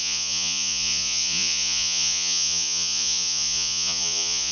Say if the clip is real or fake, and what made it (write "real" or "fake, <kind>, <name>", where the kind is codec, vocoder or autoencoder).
fake, vocoder, Vocos